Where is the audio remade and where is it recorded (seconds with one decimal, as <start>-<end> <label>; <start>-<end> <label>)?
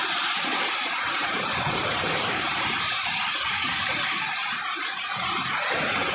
0.0-1.2 recorded; 1.2-4.9 remade; 4.9-6.1 recorded